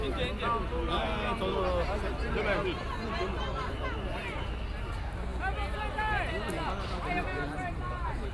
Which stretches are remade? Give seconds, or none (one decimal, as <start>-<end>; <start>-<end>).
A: none